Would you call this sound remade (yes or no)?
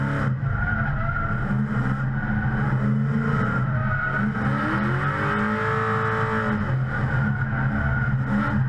no